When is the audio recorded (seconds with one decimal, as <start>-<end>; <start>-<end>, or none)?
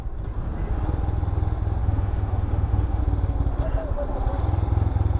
0.0-1.8; 3.0-5.2